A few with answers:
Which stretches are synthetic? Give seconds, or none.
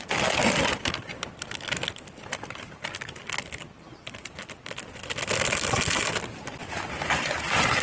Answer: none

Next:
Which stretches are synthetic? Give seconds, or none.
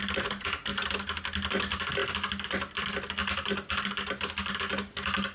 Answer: 3.2-4.3 (vocoder, BigVGAN v2)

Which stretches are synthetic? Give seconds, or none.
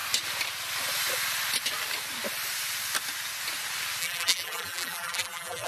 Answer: 4.0-5.7 (vocoder, BigVGAN v2)